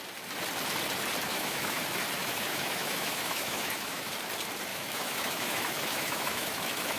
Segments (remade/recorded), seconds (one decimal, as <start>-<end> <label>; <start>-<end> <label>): 0.0-1.3 recorded; 1.3-1.8 remade; 1.8-2.2 recorded; 2.2-4.1 remade; 4.1-4.7 recorded; 4.7-7.0 remade